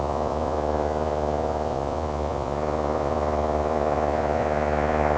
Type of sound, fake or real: fake